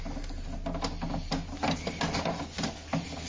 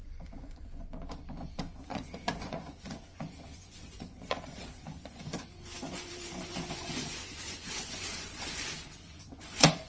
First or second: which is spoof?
second